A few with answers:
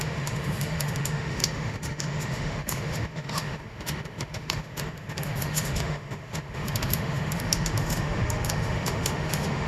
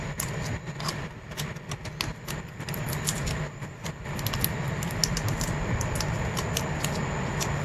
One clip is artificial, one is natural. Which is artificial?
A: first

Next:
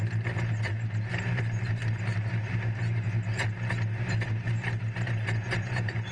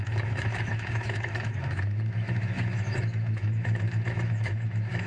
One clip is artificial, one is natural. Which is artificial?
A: second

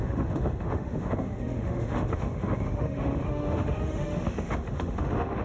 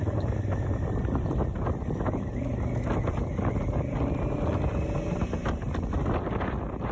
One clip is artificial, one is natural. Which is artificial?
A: first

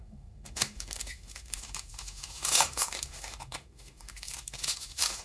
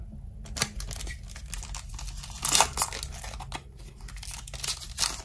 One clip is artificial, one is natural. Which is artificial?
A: first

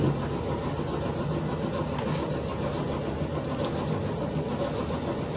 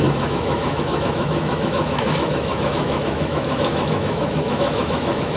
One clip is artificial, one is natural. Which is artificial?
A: second